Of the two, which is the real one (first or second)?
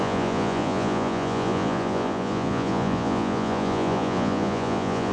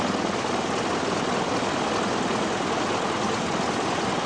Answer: second